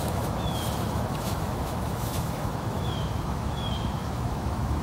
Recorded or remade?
remade